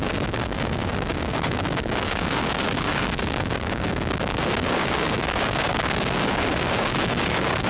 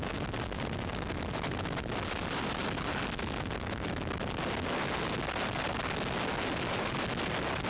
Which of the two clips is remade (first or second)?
first